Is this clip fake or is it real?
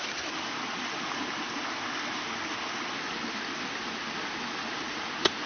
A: real